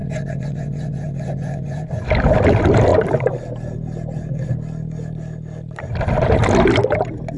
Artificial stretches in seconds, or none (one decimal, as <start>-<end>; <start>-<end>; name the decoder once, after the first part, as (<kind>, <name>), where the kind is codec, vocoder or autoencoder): 0.0-2.1 (vocoder, Vocos)